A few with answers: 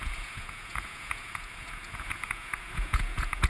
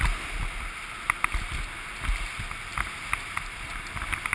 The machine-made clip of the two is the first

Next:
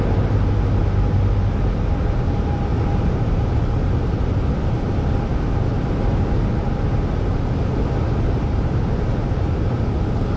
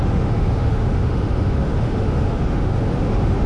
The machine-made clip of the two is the second